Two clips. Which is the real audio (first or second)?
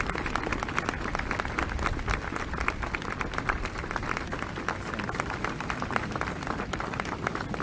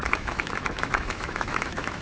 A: first